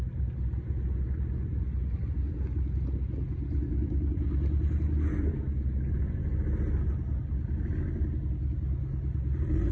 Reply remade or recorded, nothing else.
recorded